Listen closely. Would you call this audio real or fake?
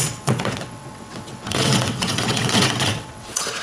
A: fake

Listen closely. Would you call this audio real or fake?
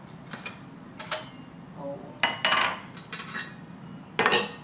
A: real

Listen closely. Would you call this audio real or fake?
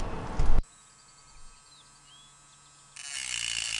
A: real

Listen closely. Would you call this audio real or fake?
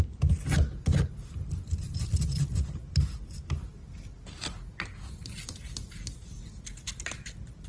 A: real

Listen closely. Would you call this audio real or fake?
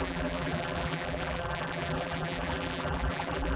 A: fake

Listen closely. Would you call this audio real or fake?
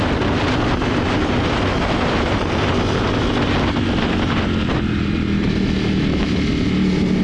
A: real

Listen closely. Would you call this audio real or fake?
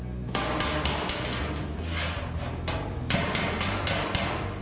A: real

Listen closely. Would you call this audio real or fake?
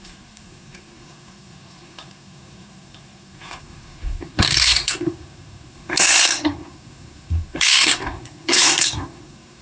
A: fake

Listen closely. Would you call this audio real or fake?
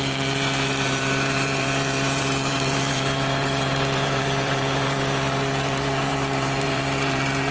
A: fake